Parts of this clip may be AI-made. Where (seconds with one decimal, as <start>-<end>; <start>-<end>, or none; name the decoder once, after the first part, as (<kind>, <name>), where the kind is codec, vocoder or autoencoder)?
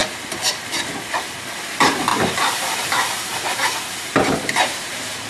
2.1-5.3 (vocoder, BigVGAN v2)